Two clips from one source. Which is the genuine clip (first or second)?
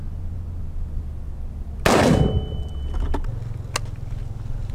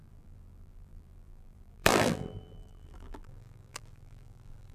first